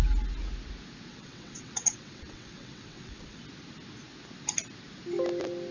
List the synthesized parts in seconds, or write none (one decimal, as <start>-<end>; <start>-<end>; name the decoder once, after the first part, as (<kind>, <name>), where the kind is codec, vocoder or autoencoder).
1.1-3.4 (vocoder, WaveNeXt)